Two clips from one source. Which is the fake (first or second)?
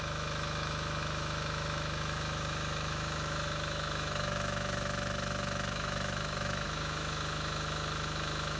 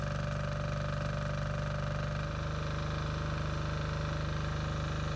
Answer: first